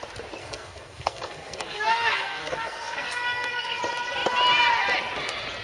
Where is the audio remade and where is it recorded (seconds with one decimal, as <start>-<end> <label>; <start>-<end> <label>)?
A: 0.0-0.4 recorded; 0.4-3.8 remade; 3.8-5.6 recorded